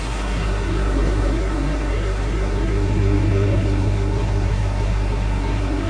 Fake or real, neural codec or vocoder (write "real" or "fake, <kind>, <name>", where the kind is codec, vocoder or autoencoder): fake, codec, SNAC